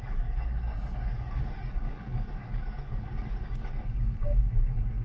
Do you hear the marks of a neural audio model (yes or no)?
yes